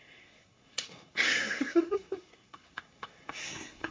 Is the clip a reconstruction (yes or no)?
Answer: yes